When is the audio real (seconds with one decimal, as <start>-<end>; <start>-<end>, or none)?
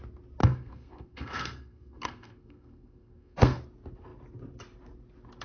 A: 0.0-0.4; 3.6-5.4